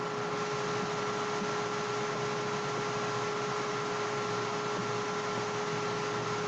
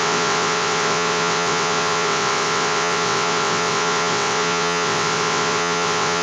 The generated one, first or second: second